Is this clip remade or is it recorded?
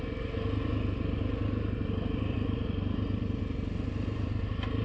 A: recorded